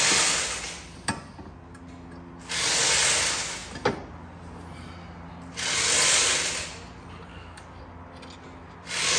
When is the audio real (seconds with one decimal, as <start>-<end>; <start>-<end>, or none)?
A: 0.0-7.3; 7.8-9.2